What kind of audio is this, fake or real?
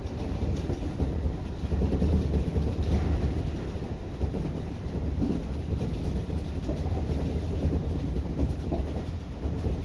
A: fake